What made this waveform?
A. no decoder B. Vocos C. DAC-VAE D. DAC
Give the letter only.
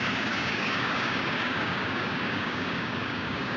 D